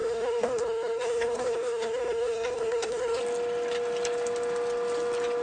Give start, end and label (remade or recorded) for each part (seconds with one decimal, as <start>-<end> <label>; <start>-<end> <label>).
0.0-3.2 remade; 3.2-5.4 recorded